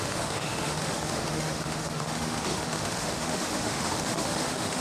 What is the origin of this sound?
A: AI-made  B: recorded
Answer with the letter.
A